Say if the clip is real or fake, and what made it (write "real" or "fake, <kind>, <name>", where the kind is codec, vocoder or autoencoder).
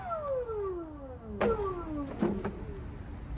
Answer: real